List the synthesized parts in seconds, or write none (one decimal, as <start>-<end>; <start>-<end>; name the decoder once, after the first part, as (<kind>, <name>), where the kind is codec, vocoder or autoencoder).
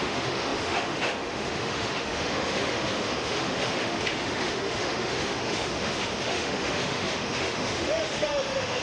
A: 0.0-8.8 (autoencoder, DAC-VAE)